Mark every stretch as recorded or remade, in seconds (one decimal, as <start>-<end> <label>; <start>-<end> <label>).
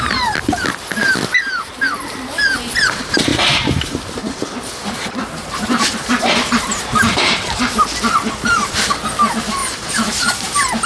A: 0.0-3.3 recorded; 3.3-7.8 remade; 7.8-9.6 recorded; 9.6-10.9 remade